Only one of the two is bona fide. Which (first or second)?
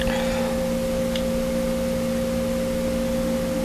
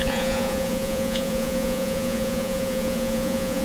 first